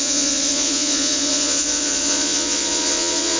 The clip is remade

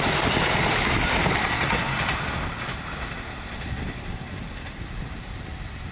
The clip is recorded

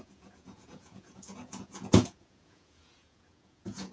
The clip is remade